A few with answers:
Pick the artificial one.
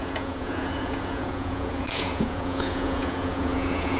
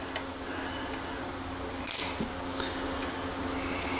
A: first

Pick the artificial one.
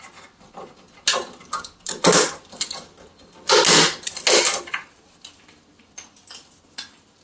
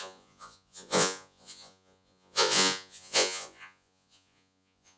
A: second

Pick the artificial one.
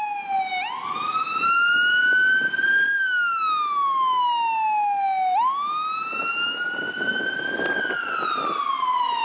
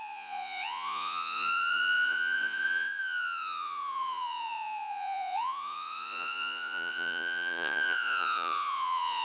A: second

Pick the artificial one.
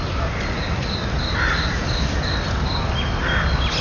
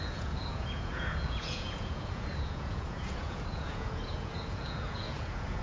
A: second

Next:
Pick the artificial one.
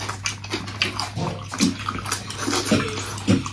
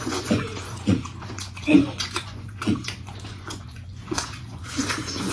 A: second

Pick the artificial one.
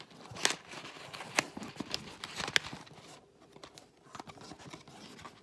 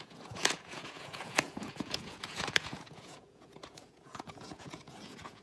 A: second